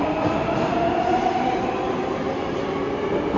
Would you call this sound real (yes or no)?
yes